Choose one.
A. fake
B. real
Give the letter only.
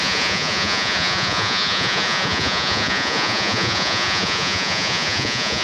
A